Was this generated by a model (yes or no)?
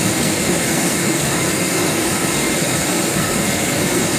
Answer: yes